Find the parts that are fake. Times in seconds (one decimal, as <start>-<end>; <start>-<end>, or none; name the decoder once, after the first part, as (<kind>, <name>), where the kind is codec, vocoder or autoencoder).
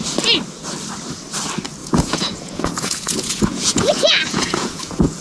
1.8-5.2 (vocoder, Vocos)